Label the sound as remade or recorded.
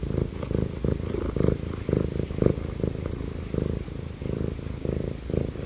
recorded